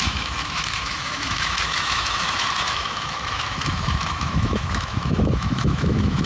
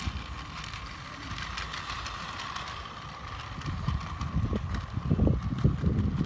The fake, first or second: first